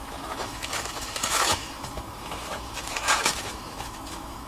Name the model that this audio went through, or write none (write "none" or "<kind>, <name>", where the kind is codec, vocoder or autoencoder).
autoencoder, DAC-VAE